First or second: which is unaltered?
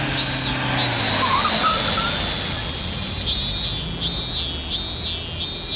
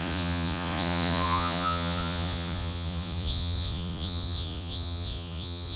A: first